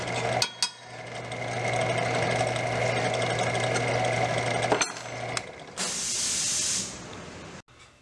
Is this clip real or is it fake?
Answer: real